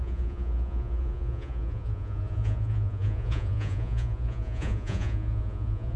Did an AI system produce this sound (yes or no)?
yes